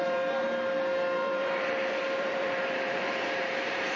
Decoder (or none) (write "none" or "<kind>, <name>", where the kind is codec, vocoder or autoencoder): vocoder, BigVGAN v2